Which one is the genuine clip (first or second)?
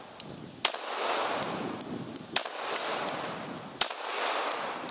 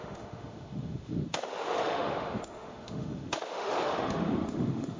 first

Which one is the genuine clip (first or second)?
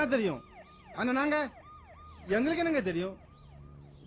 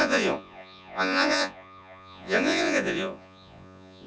first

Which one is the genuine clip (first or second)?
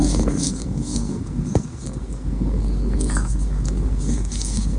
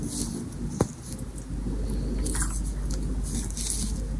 second